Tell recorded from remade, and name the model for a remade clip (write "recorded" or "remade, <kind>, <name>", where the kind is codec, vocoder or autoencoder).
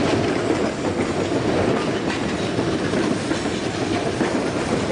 recorded